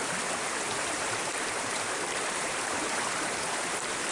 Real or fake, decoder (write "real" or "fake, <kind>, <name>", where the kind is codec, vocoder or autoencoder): fake, vocoder, BigVGAN v2